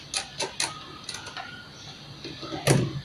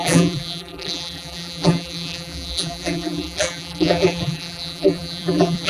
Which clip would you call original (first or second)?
first